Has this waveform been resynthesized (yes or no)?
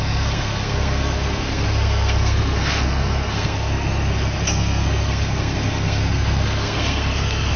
yes